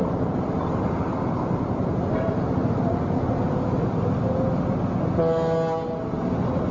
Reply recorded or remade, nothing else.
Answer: recorded